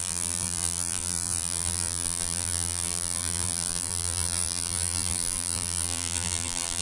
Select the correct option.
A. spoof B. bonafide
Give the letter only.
A